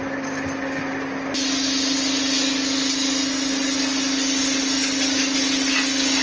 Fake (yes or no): no